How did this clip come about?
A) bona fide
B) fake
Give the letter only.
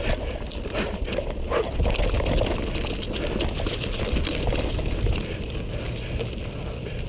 A